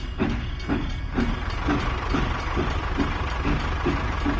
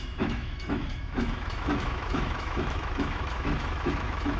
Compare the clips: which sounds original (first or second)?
first